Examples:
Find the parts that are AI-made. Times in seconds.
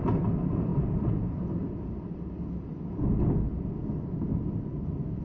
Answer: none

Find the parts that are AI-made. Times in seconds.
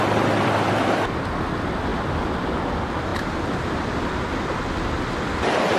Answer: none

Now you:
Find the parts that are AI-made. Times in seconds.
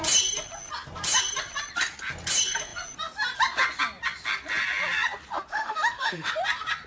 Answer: 5.5-6.3 (autoencoder, DAC-VAE)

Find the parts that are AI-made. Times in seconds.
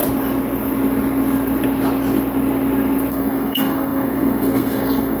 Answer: 3.1-5.2 (codec, SNAC)